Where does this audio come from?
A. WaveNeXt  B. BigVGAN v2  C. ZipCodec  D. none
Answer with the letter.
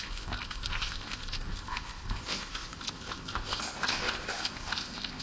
C